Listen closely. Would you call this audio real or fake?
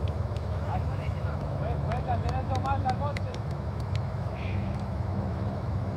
fake